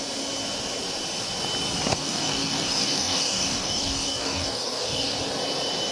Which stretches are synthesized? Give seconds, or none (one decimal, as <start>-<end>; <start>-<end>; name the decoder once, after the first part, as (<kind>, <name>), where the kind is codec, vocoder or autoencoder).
1.9-5.2 (codec, DAC)